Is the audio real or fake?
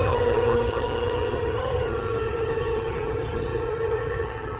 fake